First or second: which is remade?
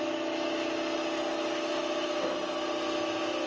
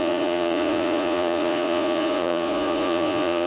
second